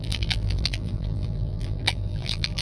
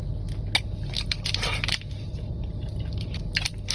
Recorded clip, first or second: second